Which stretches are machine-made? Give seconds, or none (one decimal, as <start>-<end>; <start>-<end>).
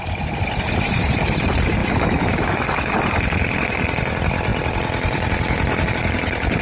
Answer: 1.8-2.9